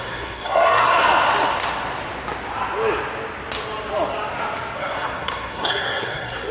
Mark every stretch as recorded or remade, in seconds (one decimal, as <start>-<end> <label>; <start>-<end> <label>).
0.0-0.9 remade; 0.9-4.8 recorded; 4.8-6.5 remade